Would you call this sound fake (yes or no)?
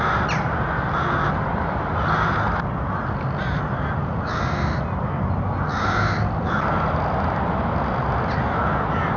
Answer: no